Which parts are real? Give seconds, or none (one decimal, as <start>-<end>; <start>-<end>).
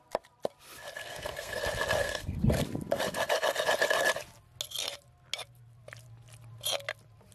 0.0-1.0; 1.6-2.0; 2.6-7.3